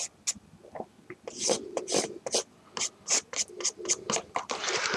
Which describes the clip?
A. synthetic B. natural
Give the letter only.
B